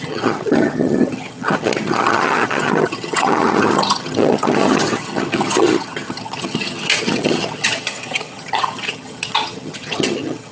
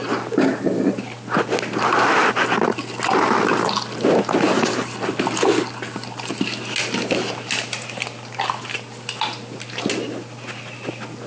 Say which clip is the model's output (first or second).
first